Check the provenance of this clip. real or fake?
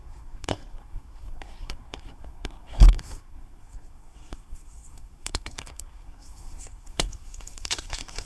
fake